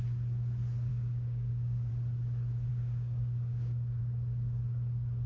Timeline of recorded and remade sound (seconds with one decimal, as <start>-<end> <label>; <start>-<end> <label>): 0.0-0.9 recorded; 0.9-1.9 remade; 1.9-2.7 recorded; 2.7-4.0 remade; 4.0-5.3 recorded